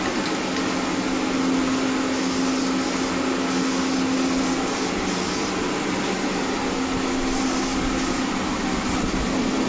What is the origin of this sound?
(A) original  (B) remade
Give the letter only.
A